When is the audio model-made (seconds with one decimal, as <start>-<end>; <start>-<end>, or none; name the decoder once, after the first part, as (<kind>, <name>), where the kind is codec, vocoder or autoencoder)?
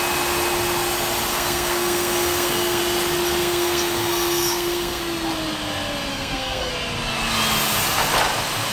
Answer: 1.3-2.8 (codec, SNAC); 3.4-5.0; 6.1-6.7